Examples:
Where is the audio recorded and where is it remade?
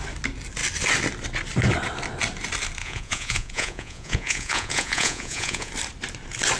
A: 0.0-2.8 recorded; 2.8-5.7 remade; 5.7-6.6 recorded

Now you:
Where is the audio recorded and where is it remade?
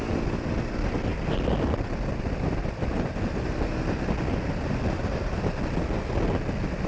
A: 0.0-6.9 recorded